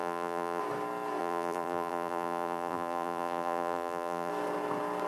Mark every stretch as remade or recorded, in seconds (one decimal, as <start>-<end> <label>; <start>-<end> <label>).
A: 0.0-0.6 remade; 0.6-1.2 recorded; 1.2-4.3 remade; 4.3-5.1 recorded